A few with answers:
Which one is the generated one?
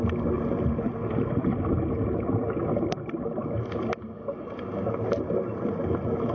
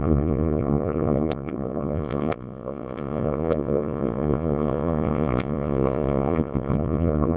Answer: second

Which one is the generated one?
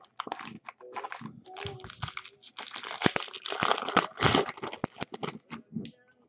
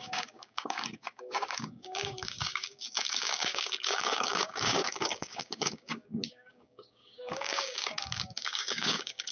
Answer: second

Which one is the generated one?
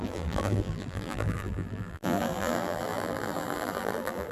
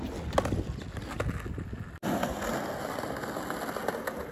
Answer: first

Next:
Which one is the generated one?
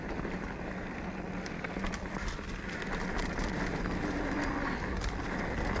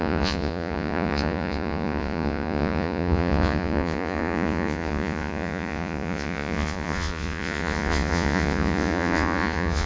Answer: second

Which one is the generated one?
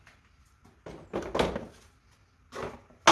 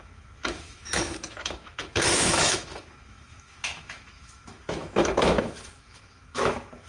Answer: second